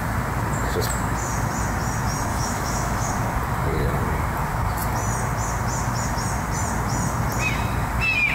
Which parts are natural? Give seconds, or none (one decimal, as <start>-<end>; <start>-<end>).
0.0-2.3; 3.1-8.3